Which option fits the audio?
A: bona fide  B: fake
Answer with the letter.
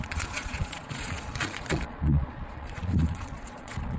B